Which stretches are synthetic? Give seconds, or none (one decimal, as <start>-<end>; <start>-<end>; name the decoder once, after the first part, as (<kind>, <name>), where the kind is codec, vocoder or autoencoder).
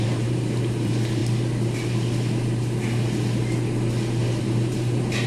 0.0-1.2 (vocoder, BigVGAN v2); 4.4-5.3